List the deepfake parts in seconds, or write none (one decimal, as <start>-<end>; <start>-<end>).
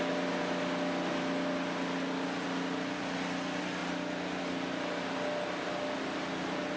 none